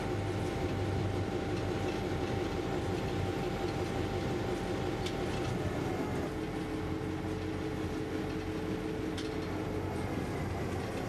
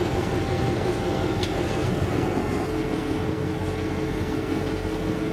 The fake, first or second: second